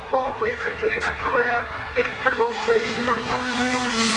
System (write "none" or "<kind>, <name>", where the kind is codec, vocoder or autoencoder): codec, SNAC